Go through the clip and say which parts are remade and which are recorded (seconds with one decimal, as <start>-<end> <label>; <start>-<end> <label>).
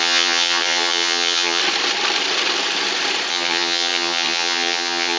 0.0-1.6 remade; 1.6-3.3 recorded; 3.3-5.2 remade